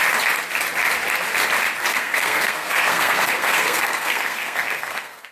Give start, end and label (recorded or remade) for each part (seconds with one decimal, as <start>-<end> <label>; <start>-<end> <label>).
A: 0.0-1.9 recorded; 1.9-5.3 remade